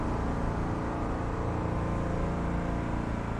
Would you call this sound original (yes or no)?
yes